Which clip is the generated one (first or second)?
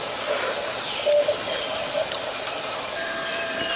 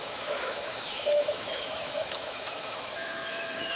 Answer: second